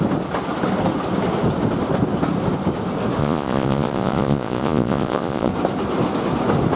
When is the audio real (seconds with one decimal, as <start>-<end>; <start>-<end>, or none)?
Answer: 0.0-3.2; 5.5-6.8